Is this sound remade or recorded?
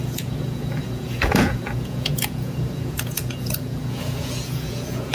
remade